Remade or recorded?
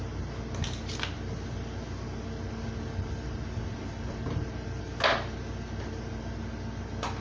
recorded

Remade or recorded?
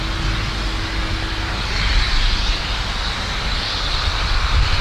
recorded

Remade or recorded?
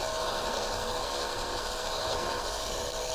remade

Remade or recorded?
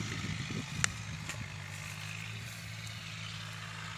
recorded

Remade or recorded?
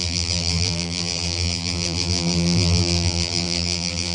remade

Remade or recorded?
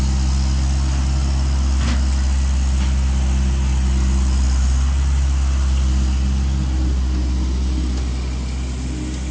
recorded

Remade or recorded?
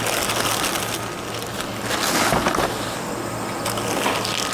recorded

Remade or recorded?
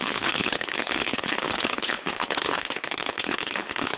remade